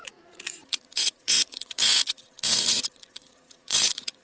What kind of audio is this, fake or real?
fake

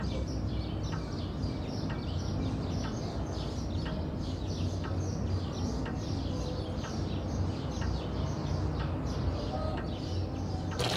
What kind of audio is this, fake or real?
real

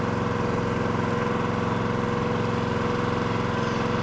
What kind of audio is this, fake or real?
real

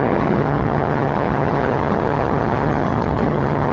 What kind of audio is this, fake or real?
fake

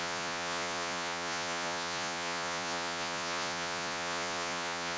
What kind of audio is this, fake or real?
fake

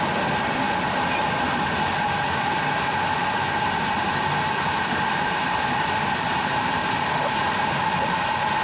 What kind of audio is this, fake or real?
real